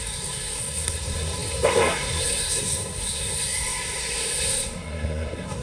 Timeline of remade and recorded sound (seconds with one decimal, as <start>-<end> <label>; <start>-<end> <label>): 0.0-5.6 remade